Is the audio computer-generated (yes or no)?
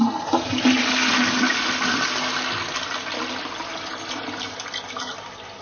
no